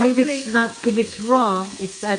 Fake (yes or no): yes